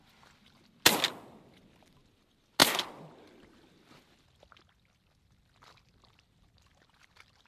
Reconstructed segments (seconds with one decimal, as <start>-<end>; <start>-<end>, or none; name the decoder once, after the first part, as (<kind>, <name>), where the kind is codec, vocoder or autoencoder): none